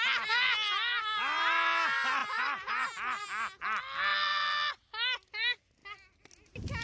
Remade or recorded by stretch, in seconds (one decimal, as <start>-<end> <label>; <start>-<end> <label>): 0.0-2.2 recorded; 2.2-3.2 remade; 3.2-4.1 recorded; 4.1-4.7 remade; 4.7-6.8 recorded